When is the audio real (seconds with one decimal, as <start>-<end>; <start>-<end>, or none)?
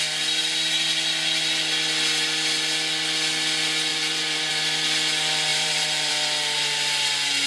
0.0-3.9; 4.5-5.5; 6.1-7.5